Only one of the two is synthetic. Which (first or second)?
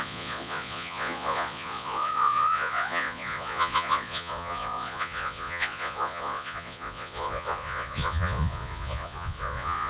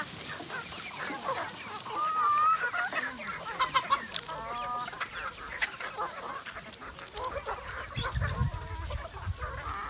first